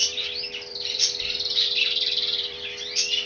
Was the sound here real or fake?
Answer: fake